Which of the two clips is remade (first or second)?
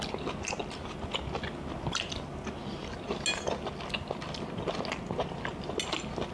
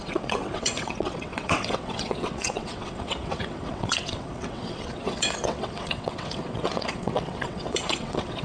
second